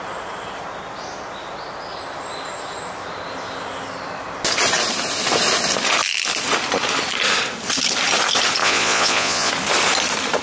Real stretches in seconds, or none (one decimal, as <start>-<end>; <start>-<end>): 0.0-8.6; 9.5-10.4